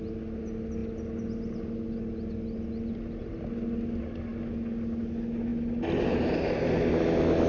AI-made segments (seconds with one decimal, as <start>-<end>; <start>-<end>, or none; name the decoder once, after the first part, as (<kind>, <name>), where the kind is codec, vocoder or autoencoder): none